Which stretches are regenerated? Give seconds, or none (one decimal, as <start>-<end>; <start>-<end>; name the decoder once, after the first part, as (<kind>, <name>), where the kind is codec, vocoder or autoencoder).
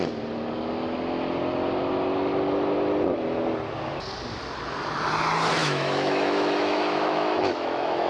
5.6-8.1 (autoencoder, DAC-VAE)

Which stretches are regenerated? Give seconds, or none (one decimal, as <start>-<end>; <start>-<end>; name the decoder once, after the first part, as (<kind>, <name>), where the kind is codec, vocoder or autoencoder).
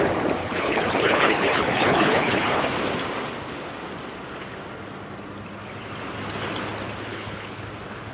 0.4-2.6 (codec, HILCodec); 7.1-7.6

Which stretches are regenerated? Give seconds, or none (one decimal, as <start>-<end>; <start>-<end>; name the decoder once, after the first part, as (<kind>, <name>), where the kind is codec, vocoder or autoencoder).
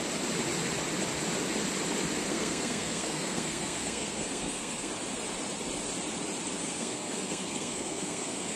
2.3-4.9 (codec, SNAC); 6.6-8.6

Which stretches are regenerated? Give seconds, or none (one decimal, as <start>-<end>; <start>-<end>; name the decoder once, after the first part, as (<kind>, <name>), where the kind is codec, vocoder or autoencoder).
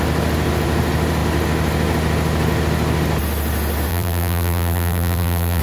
3.9-5.6 (vocoder, BigVGAN v2)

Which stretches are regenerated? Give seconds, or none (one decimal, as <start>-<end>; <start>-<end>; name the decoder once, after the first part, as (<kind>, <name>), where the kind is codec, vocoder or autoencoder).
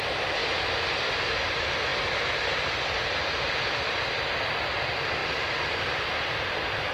0.0-0.4 (vocoder, BigVGAN v2); 1.1-5.2; 6.2-6.9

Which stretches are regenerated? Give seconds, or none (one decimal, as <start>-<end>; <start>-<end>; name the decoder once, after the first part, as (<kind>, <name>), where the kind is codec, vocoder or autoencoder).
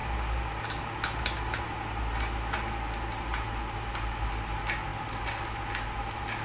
none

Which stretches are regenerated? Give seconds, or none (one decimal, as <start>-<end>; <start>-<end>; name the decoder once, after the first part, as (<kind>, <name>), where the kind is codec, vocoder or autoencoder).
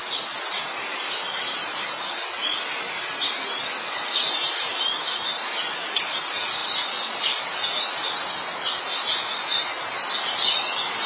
none